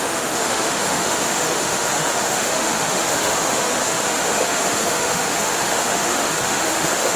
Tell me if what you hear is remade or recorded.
remade